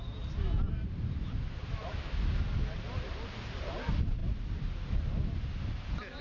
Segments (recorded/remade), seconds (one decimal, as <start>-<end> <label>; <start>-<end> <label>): 0.0-6.2 recorded